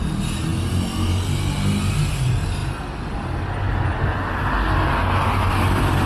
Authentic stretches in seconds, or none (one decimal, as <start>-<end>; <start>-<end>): 0.0-6.1